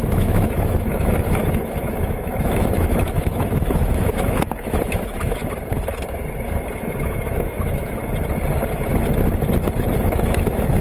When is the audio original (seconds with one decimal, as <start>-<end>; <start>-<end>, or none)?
5.4-6.8; 8.0-10.0

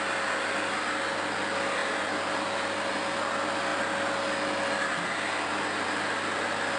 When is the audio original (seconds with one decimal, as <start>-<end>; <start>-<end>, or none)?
0.0-6.8

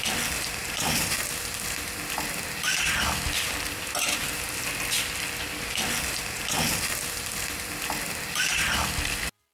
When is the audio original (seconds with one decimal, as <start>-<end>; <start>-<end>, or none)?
0.0-0.6; 1.2-9.5